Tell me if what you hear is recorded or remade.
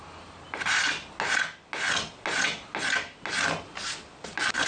recorded